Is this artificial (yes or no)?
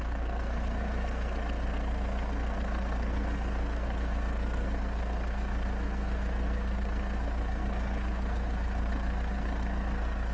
yes